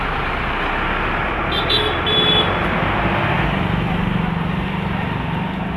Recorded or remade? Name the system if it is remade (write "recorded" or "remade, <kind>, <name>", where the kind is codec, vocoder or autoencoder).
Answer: recorded